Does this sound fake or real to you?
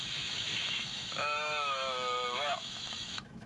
fake